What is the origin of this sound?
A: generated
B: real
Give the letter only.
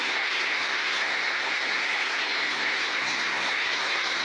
A